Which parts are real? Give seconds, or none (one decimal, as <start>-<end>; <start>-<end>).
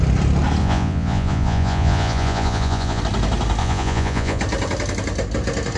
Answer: 0.0-0.6; 3.0-3.6; 4.4-5.8